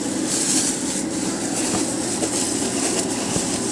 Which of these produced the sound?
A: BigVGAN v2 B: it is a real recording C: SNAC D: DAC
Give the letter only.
A